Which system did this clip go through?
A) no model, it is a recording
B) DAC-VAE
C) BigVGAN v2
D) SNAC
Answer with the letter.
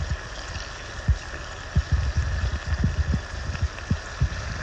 A